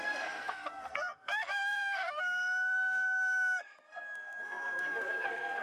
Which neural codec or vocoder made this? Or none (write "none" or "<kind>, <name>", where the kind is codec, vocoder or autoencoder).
codec, SNAC